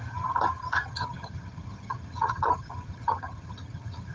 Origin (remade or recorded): remade